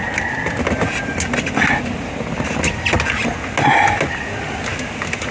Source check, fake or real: real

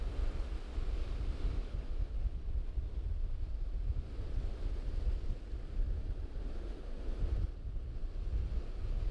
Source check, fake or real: real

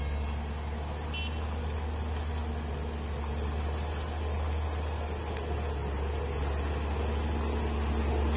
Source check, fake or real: real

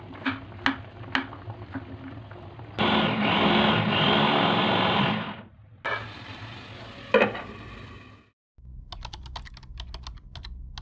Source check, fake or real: real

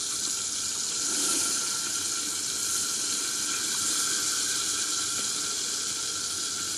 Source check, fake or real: real